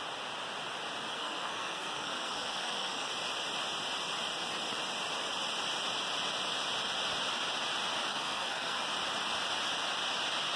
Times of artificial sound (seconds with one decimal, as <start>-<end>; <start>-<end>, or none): 1.1-3.1; 8.1-8.8